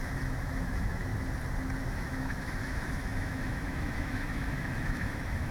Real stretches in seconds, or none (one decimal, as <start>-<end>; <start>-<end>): 1.1-1.8